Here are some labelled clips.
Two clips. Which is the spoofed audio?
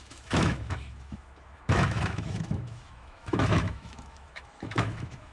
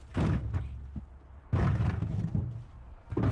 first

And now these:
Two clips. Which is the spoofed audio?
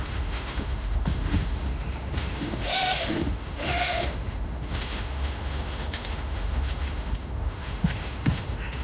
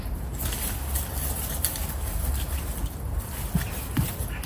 first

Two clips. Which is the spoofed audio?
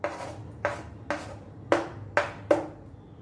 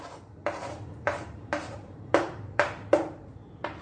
second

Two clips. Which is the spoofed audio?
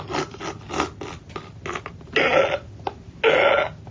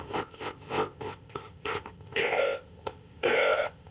second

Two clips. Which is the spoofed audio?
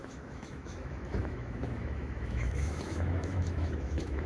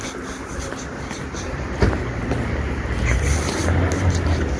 first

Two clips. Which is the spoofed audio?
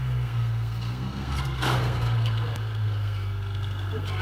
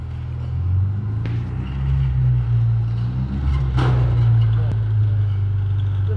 first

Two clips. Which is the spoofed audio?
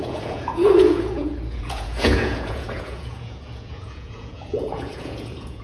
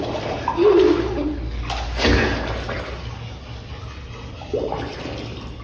first